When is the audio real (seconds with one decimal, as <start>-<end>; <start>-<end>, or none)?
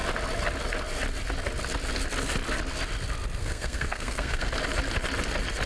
0.0-3.4; 4.5-5.7